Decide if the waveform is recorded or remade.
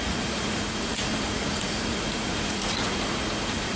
remade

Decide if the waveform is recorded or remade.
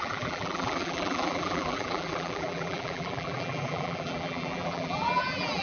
remade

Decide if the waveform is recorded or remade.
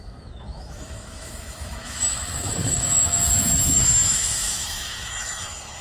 remade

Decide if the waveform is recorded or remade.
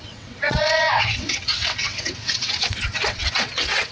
remade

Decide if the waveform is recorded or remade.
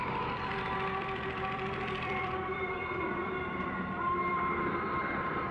remade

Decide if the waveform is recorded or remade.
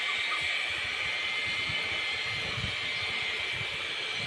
remade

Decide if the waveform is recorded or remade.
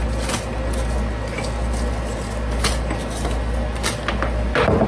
recorded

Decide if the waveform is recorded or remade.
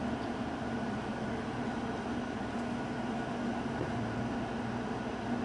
recorded